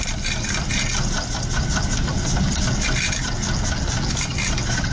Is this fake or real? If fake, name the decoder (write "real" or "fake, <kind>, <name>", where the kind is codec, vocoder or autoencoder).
real